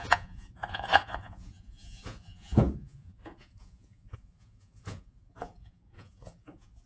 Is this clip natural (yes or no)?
no